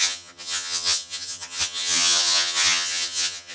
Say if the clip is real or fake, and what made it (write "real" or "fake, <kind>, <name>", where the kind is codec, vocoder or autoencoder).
fake, vocoder, HiFi-GAN